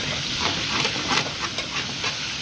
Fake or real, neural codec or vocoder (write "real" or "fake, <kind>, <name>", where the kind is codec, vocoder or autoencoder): real